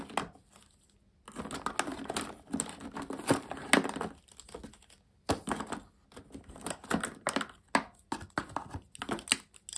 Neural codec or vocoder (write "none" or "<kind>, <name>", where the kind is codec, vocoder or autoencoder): none